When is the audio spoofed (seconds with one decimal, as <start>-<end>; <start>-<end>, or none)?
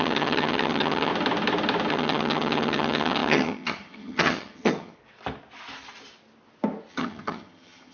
0.0-1.1; 1.9-5.0; 6.9-7.9